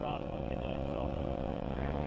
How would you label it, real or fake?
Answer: fake